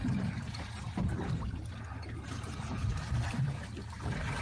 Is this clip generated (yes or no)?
no